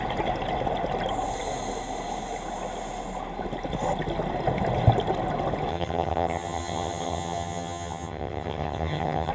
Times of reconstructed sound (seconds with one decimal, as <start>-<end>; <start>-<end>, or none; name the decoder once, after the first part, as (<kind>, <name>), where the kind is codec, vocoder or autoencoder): 5.7-9.3 (vocoder, HiFi-GAN)